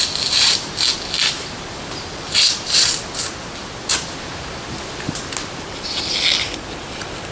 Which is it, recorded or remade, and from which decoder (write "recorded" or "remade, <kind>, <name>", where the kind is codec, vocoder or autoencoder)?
recorded